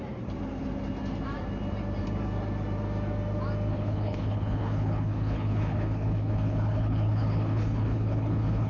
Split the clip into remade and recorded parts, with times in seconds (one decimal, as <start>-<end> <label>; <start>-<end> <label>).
0.0-3.7 recorded; 3.7-8.7 remade